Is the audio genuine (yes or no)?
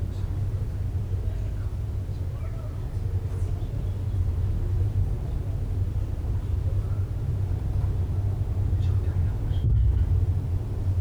yes